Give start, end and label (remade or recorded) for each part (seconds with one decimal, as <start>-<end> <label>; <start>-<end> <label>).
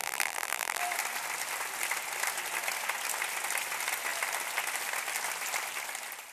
0.0-0.8 remade; 0.8-6.3 recorded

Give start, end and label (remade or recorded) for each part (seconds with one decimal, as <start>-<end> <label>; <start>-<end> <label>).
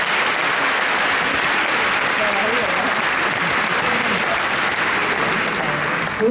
0.0-0.4 remade; 0.4-2.6 recorded; 2.6-5.0 remade; 5.0-6.3 recorded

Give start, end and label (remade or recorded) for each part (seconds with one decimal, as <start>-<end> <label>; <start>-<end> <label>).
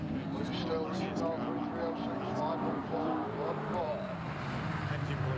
0.0-2.8 recorded; 2.8-3.8 remade; 3.8-5.4 recorded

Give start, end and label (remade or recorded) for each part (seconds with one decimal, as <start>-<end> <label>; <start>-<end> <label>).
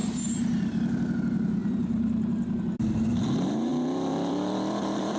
0.0-0.7 remade; 0.7-1.6 recorded; 1.6-2.4 remade; 2.4-3.7 recorded; 3.7-5.2 remade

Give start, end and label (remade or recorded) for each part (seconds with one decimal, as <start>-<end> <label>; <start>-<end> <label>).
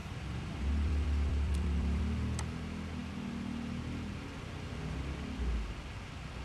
0.0-2.0 remade; 2.0-6.4 recorded